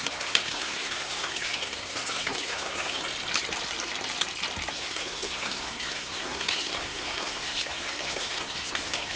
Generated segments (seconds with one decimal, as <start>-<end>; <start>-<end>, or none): 0.0-3.0; 4.7-9.2